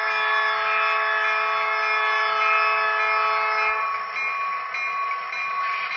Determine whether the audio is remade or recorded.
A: recorded